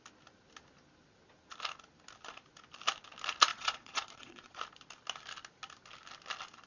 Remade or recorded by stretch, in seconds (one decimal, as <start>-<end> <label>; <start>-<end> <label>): 0.0-3.5 recorded; 3.5-4.6 remade; 4.6-6.7 recorded